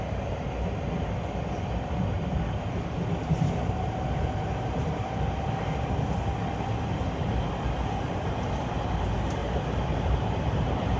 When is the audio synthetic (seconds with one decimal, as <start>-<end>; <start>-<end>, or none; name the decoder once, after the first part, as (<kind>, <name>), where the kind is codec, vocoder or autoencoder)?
9.4-11.0 (vocoder, BigVGAN v2)